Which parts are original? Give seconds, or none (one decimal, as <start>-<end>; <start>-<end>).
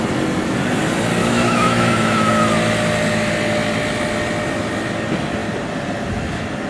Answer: 0.0-1.2; 2.3-6.7